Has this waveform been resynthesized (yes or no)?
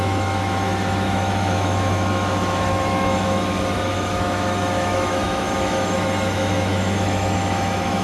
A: yes